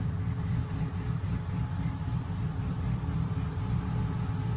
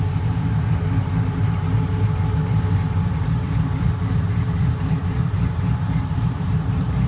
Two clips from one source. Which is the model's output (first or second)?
second